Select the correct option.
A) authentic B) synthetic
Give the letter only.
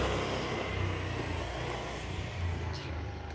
A